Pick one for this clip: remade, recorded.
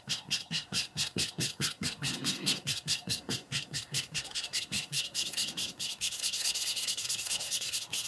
remade